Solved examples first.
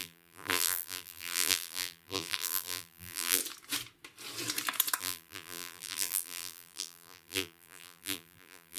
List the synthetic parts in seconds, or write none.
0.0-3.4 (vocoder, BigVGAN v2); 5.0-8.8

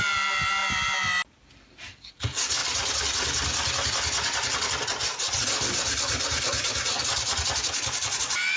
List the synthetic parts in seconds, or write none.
none

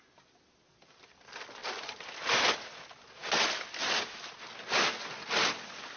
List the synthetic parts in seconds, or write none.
none

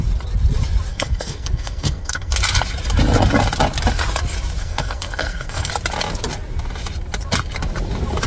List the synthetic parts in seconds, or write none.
0.9-2.3 (codec, SNAC); 4.6-5.7

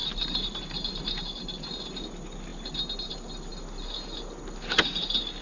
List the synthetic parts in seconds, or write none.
none